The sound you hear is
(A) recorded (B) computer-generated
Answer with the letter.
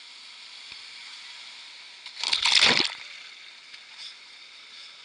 A